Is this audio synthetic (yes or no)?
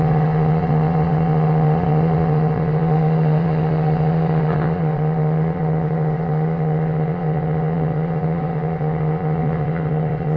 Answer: yes